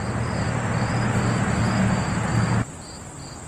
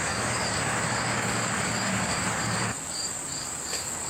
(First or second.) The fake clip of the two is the second